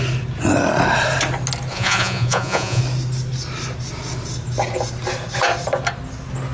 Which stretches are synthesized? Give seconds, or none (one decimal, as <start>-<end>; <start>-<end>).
1.7-2.8